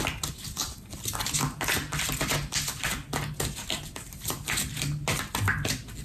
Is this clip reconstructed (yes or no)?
no